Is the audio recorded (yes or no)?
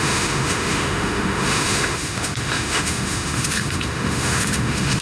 no